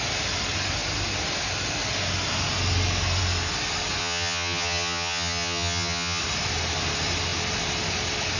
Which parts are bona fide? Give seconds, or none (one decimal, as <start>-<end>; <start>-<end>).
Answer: 0.0-4.0; 6.2-8.4